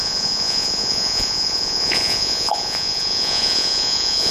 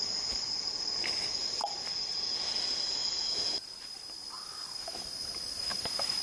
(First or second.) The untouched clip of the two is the second